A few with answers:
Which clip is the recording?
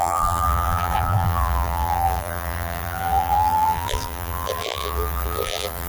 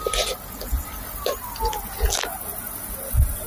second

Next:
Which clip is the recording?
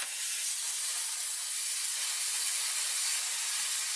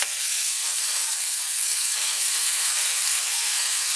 first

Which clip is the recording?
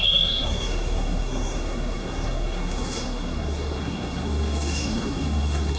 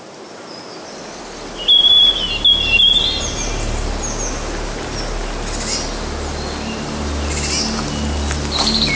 second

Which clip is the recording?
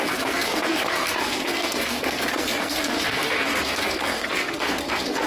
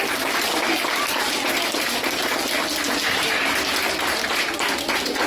second